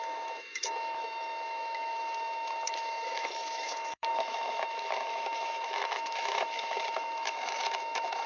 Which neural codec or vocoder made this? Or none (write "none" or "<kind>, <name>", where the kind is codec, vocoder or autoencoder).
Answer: autoencoder, DAC-VAE